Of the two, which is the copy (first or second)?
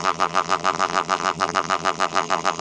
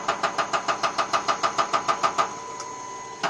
first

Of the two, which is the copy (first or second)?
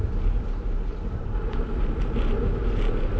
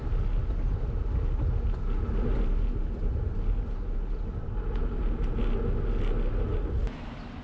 first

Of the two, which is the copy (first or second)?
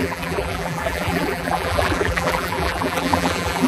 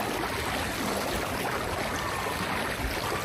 first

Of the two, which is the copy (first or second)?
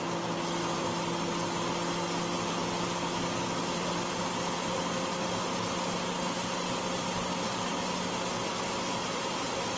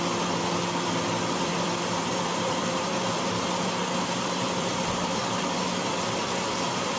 second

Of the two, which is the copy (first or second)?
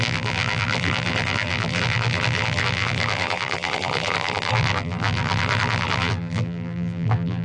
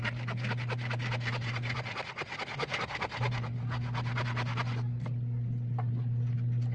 first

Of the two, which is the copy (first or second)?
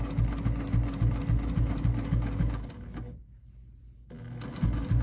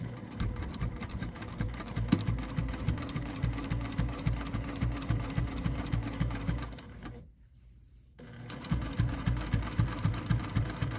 second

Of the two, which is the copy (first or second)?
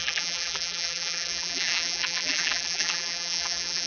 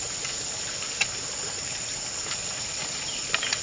first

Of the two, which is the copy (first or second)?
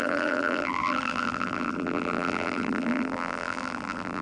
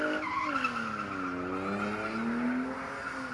first